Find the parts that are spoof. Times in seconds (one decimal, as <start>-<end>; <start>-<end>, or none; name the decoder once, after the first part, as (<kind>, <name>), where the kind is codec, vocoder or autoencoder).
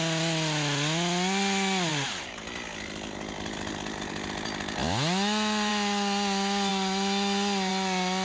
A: 1.9-2.4 (vocoder, BigVGAN v2)